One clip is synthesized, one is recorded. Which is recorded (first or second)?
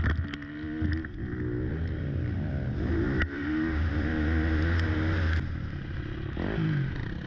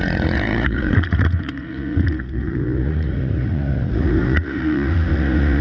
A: first